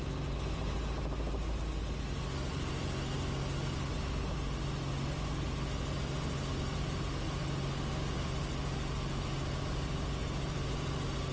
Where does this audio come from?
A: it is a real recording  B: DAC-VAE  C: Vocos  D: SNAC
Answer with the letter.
A